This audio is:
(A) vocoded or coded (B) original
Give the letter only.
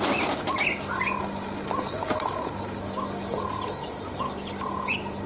B